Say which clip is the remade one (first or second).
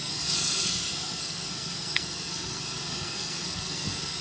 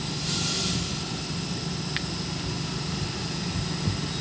first